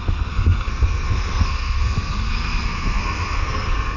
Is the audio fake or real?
fake